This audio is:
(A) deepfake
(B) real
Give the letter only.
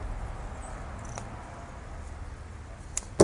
B